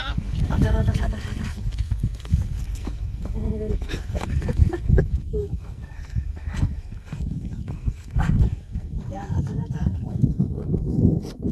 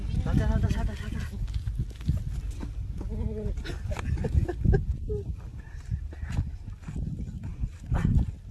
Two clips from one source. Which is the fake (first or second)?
first